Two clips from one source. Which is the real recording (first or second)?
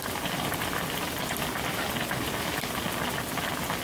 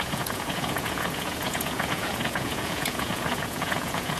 first